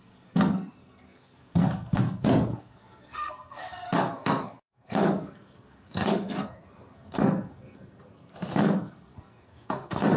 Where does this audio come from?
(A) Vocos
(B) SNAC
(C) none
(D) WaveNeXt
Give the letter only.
B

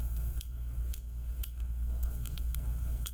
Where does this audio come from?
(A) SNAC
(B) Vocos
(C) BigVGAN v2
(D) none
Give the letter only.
A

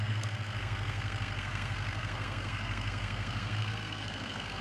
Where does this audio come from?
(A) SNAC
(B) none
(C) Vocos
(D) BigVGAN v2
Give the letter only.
A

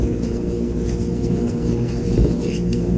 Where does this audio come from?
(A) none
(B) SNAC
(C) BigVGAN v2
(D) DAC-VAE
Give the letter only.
B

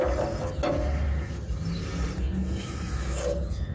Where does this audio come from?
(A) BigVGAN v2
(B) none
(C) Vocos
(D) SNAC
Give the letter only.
B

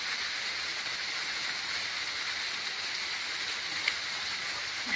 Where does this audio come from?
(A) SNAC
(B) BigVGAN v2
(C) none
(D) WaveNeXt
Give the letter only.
C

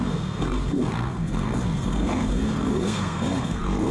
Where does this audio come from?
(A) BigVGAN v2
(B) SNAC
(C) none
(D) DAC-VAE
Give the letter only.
B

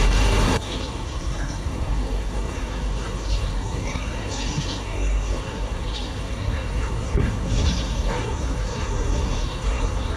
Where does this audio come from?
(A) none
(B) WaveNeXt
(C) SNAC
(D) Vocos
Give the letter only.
C